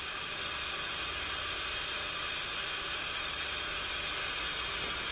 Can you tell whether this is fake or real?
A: real